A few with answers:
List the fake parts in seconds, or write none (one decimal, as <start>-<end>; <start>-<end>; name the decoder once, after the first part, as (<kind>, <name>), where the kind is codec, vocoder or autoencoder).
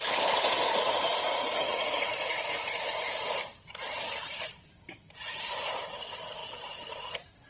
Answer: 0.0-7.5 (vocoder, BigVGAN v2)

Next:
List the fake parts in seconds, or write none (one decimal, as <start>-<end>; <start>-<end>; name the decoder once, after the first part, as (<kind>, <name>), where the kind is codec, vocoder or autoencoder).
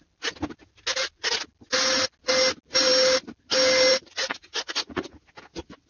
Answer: 3.9-5.2 (vocoder, Vocos)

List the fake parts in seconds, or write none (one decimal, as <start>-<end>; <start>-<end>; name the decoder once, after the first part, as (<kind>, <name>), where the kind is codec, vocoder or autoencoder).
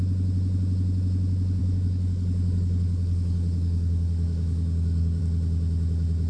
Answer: 1.6-5.2 (codec, DAC)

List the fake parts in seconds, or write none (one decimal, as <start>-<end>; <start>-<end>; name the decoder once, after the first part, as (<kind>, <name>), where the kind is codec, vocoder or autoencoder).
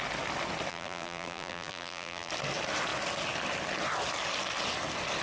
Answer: 0.7-2.3 (vocoder, BigVGAN v2)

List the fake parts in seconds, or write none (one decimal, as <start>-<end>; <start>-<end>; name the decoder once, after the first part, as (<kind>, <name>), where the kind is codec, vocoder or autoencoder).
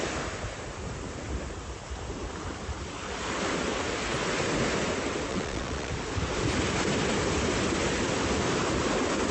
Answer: 5.3-5.9 (vocoder, Vocos)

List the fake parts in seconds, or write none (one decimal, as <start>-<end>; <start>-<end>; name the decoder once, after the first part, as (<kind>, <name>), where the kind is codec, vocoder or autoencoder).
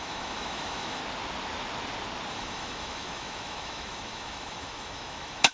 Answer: 0.0-1.0 (autoencoder, DAC-VAE); 2.3-5.5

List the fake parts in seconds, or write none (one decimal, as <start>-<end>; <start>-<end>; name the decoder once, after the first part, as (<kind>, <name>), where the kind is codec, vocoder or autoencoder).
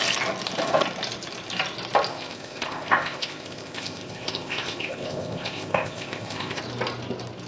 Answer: 2.1-6.6 (codec, ZipCodec)